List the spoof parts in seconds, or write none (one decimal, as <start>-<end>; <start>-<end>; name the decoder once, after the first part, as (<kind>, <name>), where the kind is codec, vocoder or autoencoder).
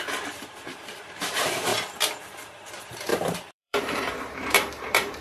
0.0-1.7 (vocoder, BigVGAN v2); 2.2-5.2